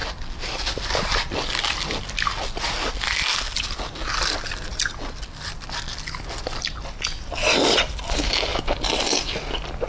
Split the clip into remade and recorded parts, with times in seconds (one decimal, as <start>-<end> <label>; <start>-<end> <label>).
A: 0.0-9.9 recorded